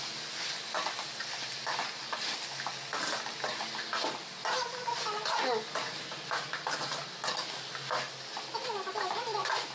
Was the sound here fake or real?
real